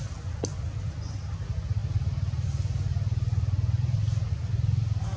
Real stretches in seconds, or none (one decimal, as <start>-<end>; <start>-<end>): 0.0-5.2